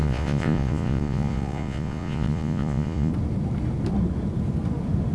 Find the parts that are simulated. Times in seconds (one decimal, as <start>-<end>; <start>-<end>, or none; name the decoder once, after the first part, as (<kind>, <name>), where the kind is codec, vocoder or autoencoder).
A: 0.0-3.1 (vocoder, Vocos)